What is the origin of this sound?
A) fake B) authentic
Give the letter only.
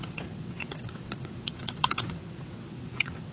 A